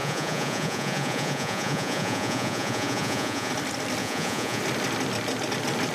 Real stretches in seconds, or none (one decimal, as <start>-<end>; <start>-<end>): 3.5-4.0; 4.6-5.9